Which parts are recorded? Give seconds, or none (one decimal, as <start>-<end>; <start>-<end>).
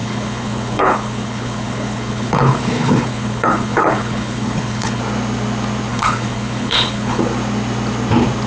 5.0-5.9; 7.2-8.5